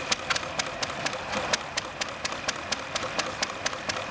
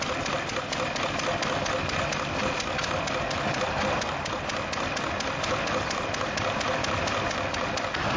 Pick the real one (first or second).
second